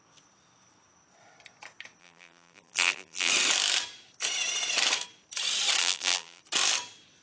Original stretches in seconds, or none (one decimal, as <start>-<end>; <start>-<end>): 0.0-2.0; 3.3-5.8; 6.4-7.2